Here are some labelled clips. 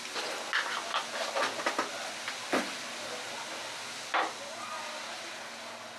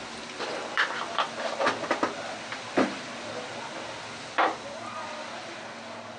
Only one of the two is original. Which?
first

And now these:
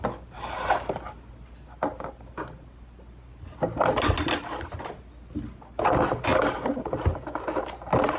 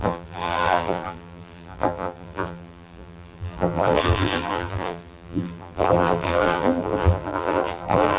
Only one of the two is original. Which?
first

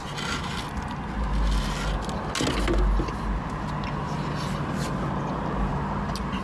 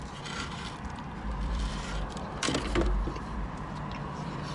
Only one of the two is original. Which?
first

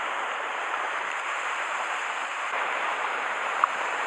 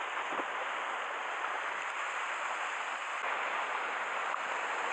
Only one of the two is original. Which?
second